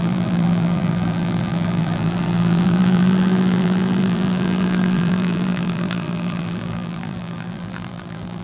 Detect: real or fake fake